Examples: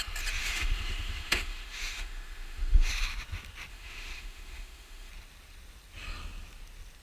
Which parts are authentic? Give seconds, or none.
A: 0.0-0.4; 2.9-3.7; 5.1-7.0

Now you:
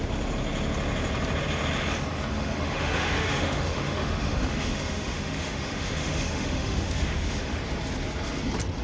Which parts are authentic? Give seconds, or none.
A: 0.0-2.3; 7.6-8.8